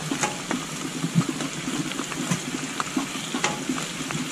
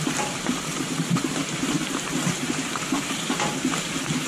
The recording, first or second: first